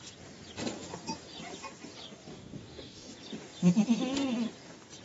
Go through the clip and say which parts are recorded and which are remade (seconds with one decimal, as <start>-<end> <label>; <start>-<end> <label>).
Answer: 0.0-2.3 recorded; 2.3-3.1 remade; 3.1-5.0 recorded